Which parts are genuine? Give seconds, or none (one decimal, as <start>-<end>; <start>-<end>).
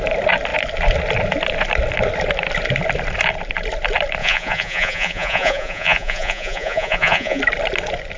0.0-4.2; 7.4-8.2